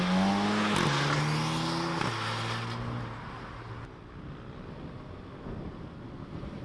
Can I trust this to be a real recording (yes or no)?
yes